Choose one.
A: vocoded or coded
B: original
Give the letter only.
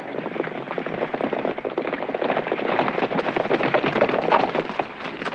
A